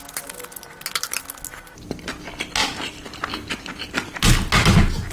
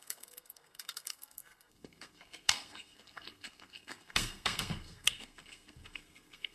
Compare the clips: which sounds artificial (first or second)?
second